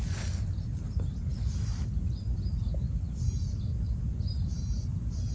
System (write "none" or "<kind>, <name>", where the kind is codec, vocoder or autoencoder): none